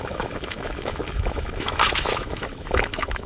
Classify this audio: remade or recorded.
remade